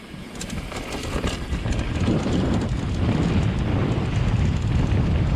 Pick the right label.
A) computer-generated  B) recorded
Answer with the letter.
A